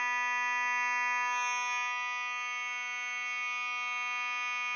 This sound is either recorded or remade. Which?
recorded